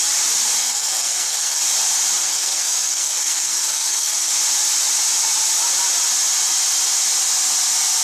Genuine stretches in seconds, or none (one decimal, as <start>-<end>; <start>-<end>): 0.0-0.6; 1.6-2.2; 4.3-8.0